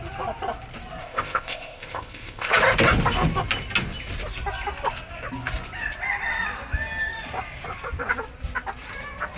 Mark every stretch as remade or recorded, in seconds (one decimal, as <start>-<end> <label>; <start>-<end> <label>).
0.0-1.0 recorded; 1.0-2.5 remade; 2.5-9.4 recorded